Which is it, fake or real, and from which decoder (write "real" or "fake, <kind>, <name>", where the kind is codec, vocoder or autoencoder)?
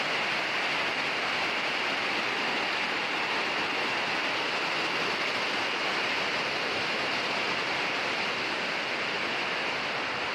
real